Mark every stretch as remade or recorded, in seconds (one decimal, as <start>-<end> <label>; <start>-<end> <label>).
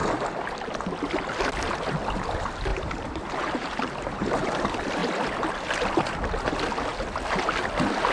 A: 0.0-2.7 recorded; 2.7-4.3 remade; 4.3-8.1 recorded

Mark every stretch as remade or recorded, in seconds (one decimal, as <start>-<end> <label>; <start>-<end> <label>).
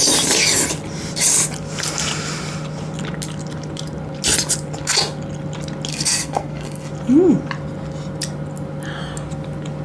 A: 0.0-5.9 recorded; 5.9-6.9 remade; 6.9-9.8 recorded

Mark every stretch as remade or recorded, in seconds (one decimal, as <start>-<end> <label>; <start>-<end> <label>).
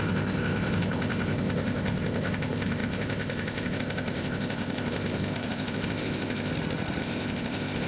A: 0.0-6.5 remade; 6.5-7.0 recorded; 7.0-7.9 remade